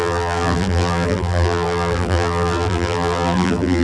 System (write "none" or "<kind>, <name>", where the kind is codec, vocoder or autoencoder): vocoder, BigVGAN v2